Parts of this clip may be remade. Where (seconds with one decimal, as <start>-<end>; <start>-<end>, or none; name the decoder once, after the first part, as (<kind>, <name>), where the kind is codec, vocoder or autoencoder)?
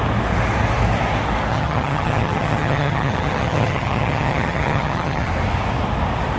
1.5-5.3 (vocoder, HiFi-GAN)